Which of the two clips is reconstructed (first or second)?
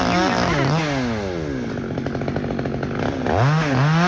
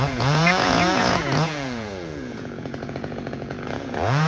second